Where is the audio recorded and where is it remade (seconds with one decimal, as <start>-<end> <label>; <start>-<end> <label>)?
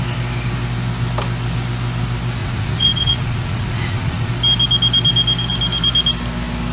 0.0-2.4 recorded; 2.4-4.3 remade; 4.3-6.7 recorded